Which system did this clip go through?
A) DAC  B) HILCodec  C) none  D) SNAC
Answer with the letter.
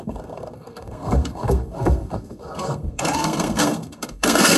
D